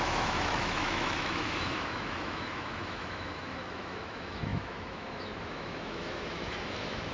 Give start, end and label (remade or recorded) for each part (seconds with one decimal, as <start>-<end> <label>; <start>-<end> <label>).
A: 0.0-7.1 remade